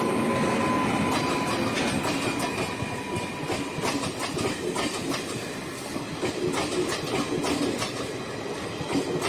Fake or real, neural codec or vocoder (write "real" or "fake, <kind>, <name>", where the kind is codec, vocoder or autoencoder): real